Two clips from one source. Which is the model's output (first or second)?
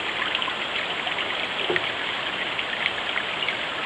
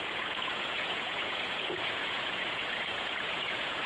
second